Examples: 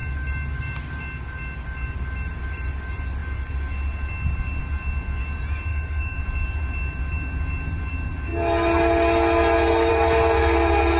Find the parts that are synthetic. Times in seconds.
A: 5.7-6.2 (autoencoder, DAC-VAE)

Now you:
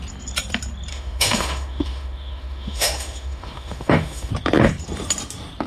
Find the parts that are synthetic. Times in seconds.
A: 0.9-4.3 (autoencoder, DAC-VAE)

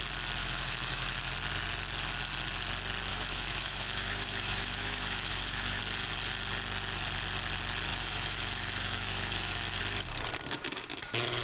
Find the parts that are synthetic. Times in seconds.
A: 0.4-1.3 (autoencoder, DAC-VAE); 3.1-5.8; 7.9-9.8

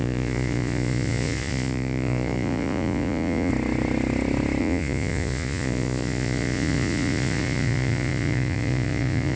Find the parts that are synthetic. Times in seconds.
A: 0.0-3.5 (vocoder, Vocos); 4.6-9.4

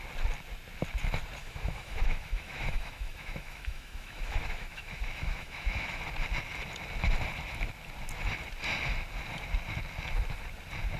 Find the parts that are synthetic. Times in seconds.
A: 1.4-6.0 (autoencoder, DAC-VAE)